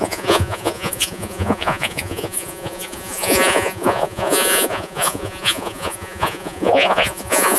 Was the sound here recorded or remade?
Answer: remade